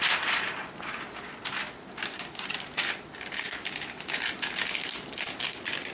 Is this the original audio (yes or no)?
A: yes